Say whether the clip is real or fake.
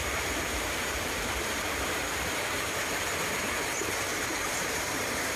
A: fake